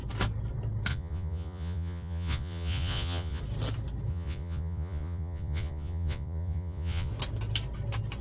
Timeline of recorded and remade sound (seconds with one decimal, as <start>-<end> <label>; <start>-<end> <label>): 0.0-0.9 recorded; 0.9-3.4 remade; 3.4-4.1 recorded; 4.1-7.1 remade; 7.1-8.2 recorded